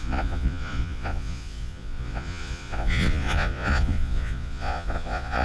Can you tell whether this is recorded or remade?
remade